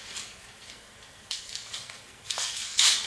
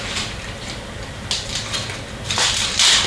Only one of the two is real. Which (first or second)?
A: second